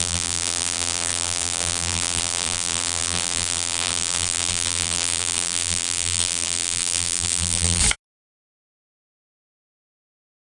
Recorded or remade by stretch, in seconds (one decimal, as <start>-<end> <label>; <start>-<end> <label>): 0.0-7.8 remade; 7.8-9.0 recorded; 9.0-10.5 remade